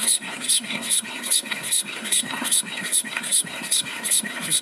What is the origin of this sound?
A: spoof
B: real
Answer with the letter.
A